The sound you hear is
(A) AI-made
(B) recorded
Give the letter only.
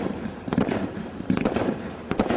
A